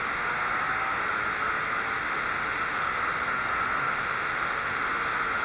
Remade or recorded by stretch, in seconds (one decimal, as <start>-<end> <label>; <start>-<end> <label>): 0.0-2.0 recorded; 2.0-2.9 remade; 2.9-3.8 recorded; 3.8-4.9 remade; 4.9-5.4 recorded